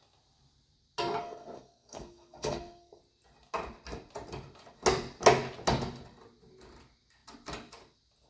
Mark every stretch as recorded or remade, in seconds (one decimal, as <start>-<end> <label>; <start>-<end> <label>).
0.0-1.2 recorded; 1.2-3.0 remade; 3.0-8.3 recorded